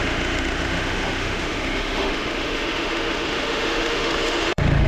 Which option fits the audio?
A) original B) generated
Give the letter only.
B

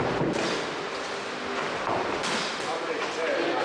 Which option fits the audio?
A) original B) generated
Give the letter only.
A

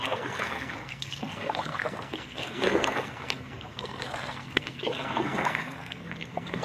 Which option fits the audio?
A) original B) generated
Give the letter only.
B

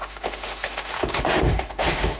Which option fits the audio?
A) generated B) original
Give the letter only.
A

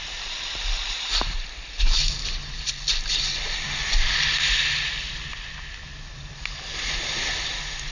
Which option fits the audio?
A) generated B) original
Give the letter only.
B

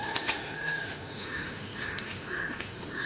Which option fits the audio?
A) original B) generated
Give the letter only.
B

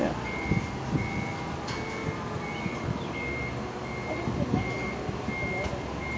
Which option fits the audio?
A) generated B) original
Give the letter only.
B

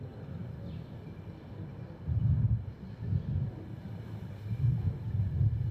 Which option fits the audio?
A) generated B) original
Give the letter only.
B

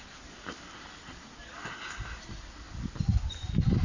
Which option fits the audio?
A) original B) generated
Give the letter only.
A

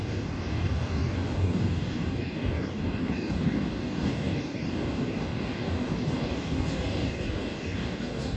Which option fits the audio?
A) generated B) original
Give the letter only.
A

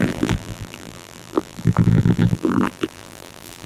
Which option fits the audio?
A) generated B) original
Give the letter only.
A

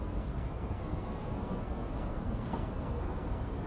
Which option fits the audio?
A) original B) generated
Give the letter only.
B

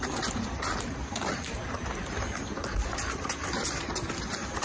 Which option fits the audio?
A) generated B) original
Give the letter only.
B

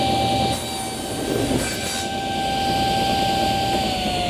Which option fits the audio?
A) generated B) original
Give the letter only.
B